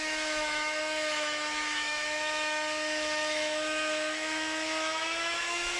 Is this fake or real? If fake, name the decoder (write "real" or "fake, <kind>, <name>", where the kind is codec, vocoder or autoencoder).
fake, autoencoder, DAC-VAE